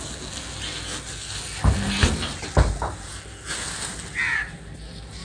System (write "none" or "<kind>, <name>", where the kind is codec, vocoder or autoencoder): none